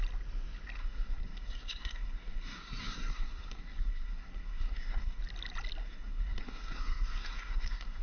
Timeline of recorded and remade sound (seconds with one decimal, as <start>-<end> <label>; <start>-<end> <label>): 0.0-0.8 recorded; 0.8-5.2 remade; 5.2-5.8 recorded; 5.8-8.0 remade